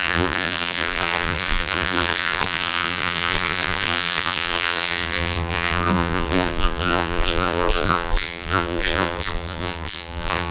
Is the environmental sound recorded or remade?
remade